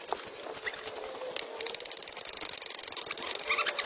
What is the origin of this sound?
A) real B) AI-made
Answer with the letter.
A